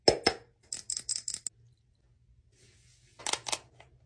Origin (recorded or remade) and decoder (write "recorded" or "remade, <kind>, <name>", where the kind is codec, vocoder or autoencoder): recorded